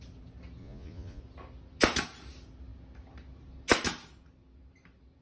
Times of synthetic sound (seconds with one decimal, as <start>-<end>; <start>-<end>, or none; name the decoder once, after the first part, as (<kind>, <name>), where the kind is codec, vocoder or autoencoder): 0.6-1.2 (vocoder, Vocos)